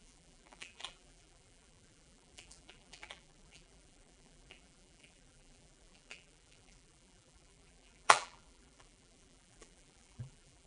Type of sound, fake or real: fake